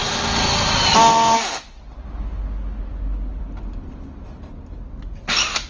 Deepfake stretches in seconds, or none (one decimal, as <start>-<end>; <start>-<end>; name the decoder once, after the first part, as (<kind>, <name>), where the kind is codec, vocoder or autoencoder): none